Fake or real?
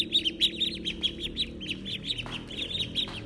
real